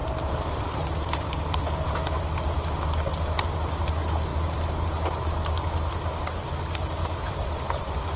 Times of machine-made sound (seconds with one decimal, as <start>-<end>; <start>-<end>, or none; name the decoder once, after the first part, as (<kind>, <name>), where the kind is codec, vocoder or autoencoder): 0.0-0.6 (vocoder, BigVGAN v2); 4.3-5.2; 7.0-7.6